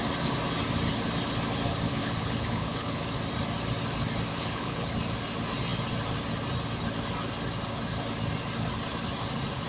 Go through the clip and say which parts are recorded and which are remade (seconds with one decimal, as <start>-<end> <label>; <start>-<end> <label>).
0.0-2.0 recorded; 2.0-3.0 remade; 3.0-4.3 recorded; 4.3-4.9 remade; 4.9-9.7 recorded